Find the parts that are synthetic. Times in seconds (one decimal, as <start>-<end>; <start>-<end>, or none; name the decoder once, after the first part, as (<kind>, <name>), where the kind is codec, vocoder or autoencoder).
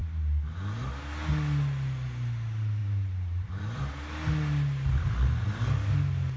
0.0-0.9 (vocoder, BigVGAN v2); 2.8-3.8